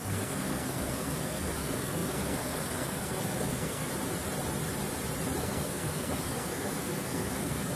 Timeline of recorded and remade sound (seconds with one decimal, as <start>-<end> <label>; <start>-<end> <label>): 0.0-3.9 remade; 3.9-5.4 recorded; 5.4-7.8 remade